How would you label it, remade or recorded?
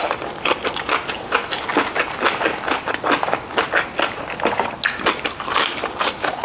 remade